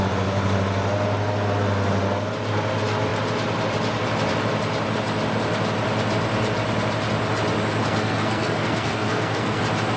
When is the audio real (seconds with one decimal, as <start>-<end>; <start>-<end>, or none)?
0.0-7.8; 9.6-10.0